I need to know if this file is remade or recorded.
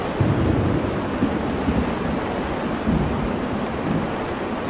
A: recorded